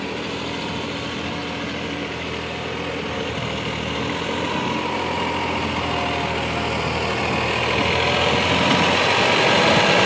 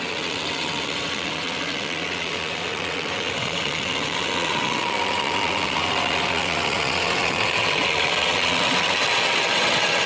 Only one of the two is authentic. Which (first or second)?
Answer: first